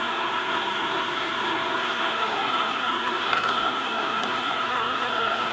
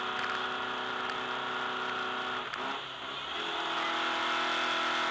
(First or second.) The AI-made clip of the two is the first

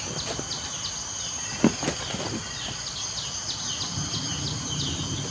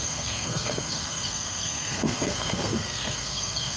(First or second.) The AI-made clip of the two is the second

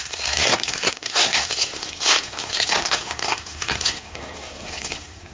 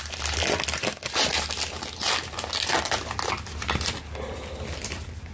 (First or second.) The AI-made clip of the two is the first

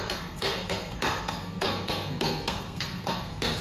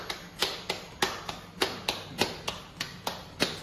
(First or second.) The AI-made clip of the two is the first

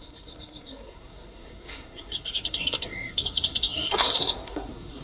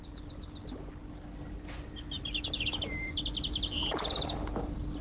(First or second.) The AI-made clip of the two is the first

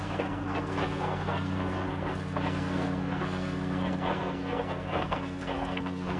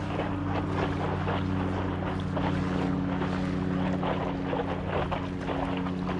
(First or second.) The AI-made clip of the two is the first